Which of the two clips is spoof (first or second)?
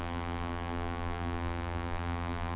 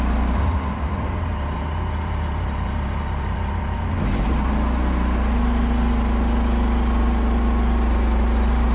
first